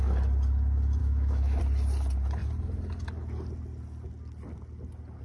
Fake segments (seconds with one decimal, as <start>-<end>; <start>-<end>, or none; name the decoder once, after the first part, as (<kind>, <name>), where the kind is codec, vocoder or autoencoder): 1.0-1.6 (autoencoder, DAC-VAE)